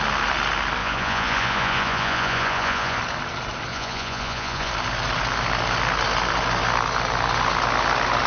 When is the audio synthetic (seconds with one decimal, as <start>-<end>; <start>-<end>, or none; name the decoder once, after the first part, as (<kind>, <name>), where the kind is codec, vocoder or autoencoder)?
0.8-3.0 (vocoder, Vocos); 3.7-4.7